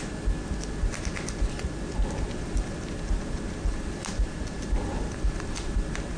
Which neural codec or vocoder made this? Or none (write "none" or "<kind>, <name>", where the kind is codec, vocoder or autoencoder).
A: none